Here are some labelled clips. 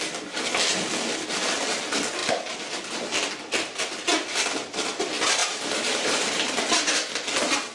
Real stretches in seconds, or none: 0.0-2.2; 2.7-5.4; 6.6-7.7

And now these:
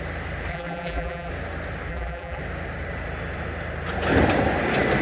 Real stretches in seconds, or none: 0.0-0.5; 1.3-1.9; 2.4-5.0